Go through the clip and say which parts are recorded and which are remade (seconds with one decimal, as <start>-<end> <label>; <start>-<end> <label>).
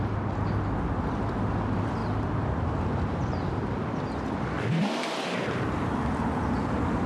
0.0-7.1 recorded